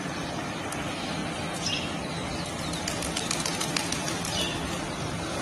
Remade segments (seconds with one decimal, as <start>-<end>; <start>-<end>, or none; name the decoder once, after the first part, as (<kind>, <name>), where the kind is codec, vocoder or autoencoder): none

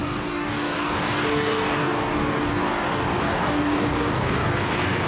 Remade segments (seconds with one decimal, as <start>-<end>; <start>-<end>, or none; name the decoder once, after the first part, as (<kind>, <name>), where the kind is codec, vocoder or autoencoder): 0.0-5.1 (codec, DAC)

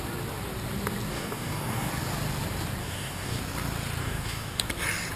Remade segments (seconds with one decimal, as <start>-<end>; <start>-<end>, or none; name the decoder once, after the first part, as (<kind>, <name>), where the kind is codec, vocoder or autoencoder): 1.1-1.9 (codec, DAC); 2.8-3.4; 4.0-4.7

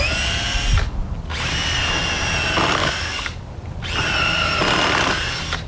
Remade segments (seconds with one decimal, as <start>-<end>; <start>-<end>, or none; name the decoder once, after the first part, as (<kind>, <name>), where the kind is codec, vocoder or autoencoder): 2.8-3.5 (codec, DAC)

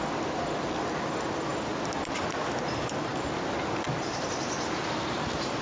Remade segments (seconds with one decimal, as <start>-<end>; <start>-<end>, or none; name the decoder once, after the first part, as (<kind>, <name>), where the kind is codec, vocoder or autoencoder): none

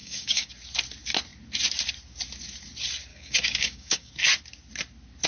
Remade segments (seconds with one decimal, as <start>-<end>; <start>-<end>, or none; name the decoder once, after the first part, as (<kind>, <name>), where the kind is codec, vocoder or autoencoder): 0.0-0.5 (codec, DAC); 3.1-4.1

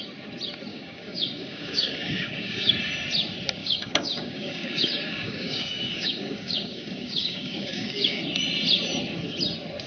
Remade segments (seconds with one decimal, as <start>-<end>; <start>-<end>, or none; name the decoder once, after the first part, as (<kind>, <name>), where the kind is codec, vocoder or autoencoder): 0.7-2.7 (codec, DAC); 3.6-8.2